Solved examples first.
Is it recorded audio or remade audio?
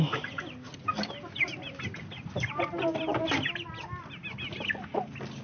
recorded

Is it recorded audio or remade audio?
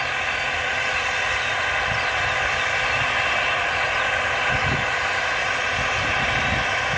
recorded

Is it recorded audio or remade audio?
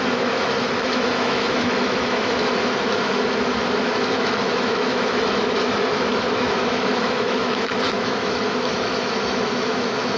remade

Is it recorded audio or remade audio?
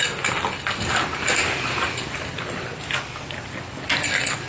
recorded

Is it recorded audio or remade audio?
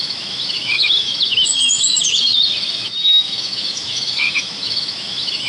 remade